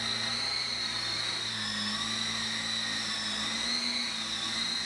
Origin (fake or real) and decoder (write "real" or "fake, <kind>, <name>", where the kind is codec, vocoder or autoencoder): real